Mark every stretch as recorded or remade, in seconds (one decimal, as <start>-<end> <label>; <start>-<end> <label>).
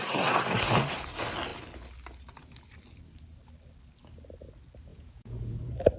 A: 0.0-4.9 recorded; 4.9-5.6 remade; 5.6-6.0 recorded